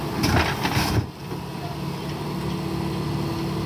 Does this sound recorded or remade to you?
recorded